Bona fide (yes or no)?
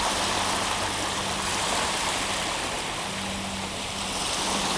yes